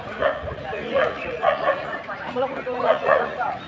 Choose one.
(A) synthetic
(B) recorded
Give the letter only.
A